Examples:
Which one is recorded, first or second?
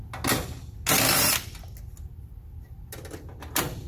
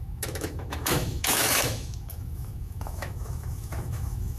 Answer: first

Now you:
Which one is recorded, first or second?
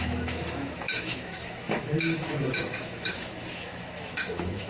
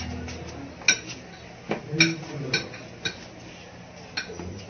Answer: second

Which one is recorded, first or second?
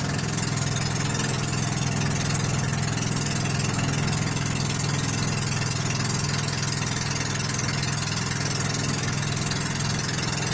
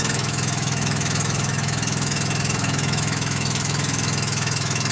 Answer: first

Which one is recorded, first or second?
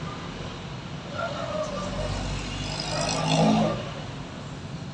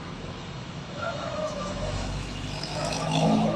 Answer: first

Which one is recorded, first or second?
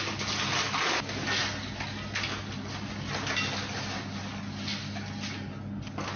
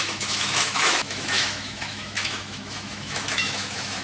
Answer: first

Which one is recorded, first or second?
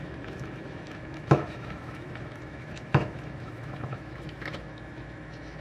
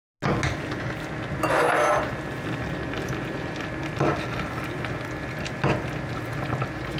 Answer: second